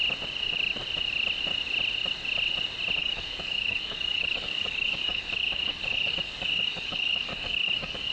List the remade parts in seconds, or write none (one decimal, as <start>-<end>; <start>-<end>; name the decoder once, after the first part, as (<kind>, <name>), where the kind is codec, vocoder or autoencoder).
3.0-8.1 (codec, DAC)